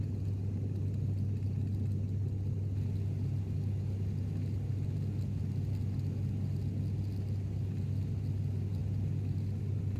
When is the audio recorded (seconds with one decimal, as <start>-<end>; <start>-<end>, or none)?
0.0-10.0